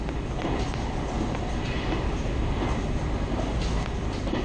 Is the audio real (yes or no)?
yes